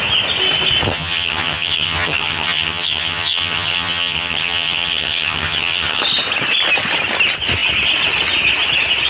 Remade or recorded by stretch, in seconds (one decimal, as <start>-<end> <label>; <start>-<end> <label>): 0.0-0.9 recorded; 0.9-6.0 remade; 6.0-9.1 recorded